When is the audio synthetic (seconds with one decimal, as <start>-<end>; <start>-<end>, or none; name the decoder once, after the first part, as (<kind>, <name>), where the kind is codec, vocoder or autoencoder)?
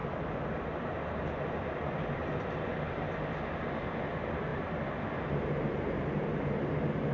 0.0-2.7 (vocoder, BigVGAN v2); 4.1-7.1